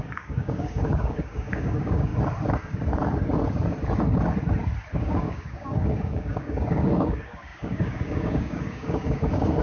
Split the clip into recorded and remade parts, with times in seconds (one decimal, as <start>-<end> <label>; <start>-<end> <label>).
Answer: 0.0-2.1 remade; 2.1-4.9 recorded; 4.9-9.6 remade

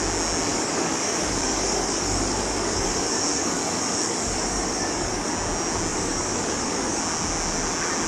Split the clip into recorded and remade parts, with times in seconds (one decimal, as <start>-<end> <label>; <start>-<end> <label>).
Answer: 0.0-0.5 recorded; 0.5-5.3 remade; 5.3-5.9 recorded; 5.9-7.0 remade; 7.0-8.1 recorded

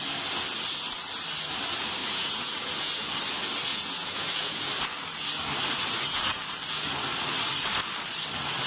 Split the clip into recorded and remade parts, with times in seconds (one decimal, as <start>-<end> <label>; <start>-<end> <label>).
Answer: 0.0-2.0 recorded; 2.0-3.1 remade; 3.1-3.7 recorded; 3.7-4.7 remade; 4.7-8.7 recorded

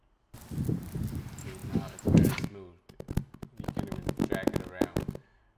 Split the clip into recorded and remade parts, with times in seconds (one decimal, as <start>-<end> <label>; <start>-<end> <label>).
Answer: 0.0-5.6 recorded

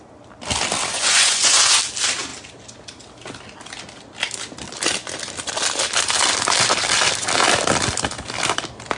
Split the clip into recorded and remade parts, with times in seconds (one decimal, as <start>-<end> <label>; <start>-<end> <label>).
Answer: 0.0-0.9 recorded; 0.9-1.8 remade; 1.8-9.0 recorded

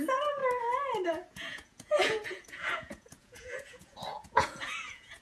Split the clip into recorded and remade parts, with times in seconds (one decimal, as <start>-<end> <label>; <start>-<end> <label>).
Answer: 0.0-0.4 remade; 0.4-1.1 recorded; 1.1-5.2 remade

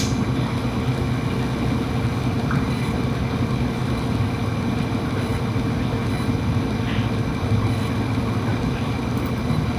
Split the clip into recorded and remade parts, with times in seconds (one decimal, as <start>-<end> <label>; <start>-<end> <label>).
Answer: 0.0-2.1 recorded; 2.1-3.2 remade; 3.2-8.5 recorded; 8.5-9.2 remade; 9.2-9.8 recorded

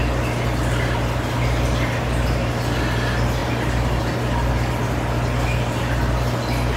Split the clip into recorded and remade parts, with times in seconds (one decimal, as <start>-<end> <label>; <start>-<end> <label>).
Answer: 0.0-6.8 recorded